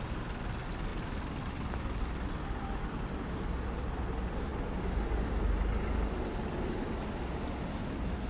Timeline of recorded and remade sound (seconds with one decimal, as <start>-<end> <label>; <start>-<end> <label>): 0.0-8.3 recorded